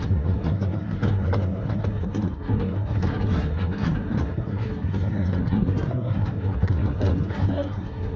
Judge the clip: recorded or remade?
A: remade